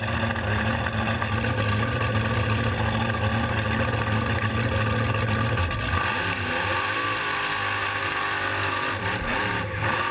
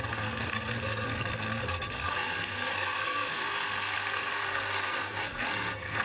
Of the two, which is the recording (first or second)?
first